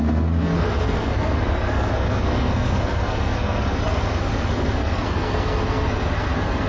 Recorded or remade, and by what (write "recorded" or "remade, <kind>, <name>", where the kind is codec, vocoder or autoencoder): remade, codec, SNAC